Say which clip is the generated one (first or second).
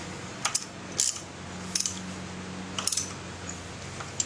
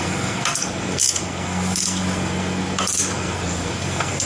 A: second